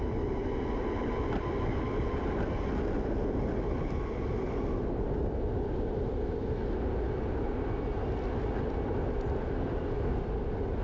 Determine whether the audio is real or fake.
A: real